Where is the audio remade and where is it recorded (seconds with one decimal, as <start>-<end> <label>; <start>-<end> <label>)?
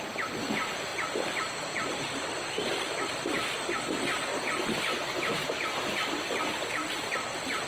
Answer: 0.0-4.3 remade; 4.3-5.9 recorded; 5.9-7.7 remade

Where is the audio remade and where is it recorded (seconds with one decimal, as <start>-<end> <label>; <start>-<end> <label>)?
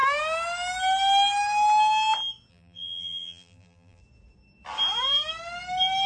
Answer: 0.0-2.5 recorded; 2.5-4.0 remade; 4.0-6.1 recorded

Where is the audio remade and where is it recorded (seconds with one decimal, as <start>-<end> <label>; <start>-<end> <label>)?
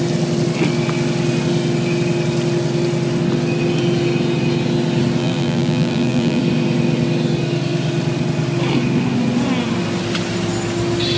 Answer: 0.0-5.2 recorded; 5.2-6.4 remade; 6.4-11.2 recorded